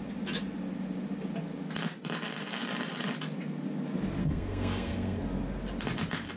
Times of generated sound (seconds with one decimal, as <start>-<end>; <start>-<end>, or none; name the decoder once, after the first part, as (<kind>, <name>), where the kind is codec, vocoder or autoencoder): 4.2-5.2 (codec, SNAC)